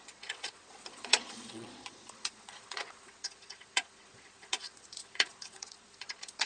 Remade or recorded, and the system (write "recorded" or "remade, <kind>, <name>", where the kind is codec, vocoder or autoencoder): remade, vocoder, Vocos